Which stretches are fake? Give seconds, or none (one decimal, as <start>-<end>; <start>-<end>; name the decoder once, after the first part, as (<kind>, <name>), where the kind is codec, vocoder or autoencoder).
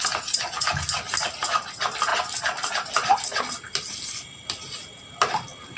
none